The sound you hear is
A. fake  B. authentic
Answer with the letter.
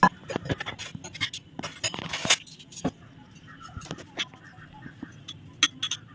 B